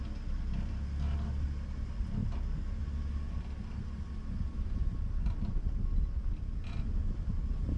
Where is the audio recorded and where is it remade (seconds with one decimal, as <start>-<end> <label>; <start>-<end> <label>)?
0.0-7.8 recorded